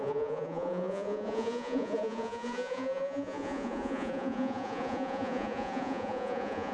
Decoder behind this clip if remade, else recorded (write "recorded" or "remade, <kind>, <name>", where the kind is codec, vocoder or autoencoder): remade, vocoder, Vocos